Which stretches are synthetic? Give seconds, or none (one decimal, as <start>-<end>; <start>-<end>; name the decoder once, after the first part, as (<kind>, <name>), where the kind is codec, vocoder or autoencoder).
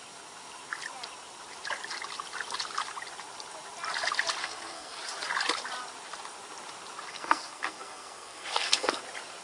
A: 4.4-5.0 (codec, SNAC); 7.1-9.0